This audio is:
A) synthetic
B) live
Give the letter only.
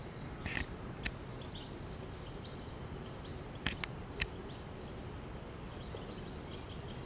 B